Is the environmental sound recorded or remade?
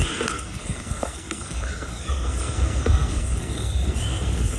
remade